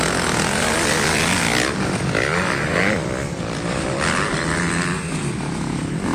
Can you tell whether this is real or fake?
real